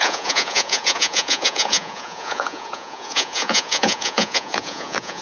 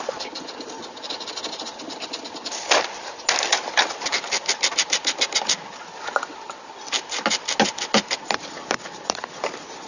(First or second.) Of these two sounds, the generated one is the first